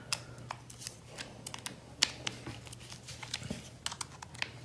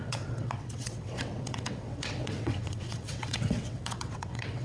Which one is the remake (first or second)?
second